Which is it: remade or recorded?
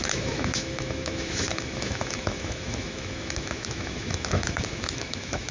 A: remade